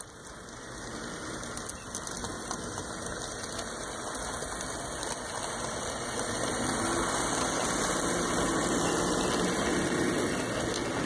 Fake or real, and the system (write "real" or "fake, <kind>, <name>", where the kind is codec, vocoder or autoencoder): real